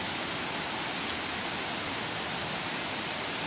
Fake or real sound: fake